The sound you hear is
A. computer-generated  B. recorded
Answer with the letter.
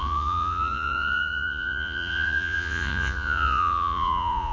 A